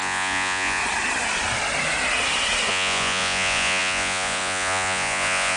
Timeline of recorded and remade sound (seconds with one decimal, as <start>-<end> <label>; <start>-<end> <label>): 0.0-0.8 remade; 0.8-2.7 recorded; 2.7-5.6 remade